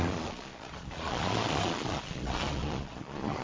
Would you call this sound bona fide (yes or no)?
no